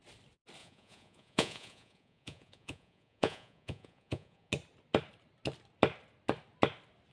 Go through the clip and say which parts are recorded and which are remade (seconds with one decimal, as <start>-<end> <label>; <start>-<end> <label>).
0.0-0.6 recorded; 0.6-4.5 remade; 4.5-7.1 recorded